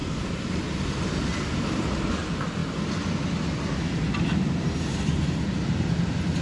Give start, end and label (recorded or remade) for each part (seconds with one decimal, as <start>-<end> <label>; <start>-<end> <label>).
0.0-2.6 remade; 2.6-3.8 recorded; 3.8-6.4 remade